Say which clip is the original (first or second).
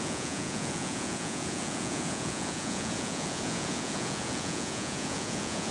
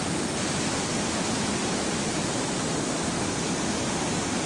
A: second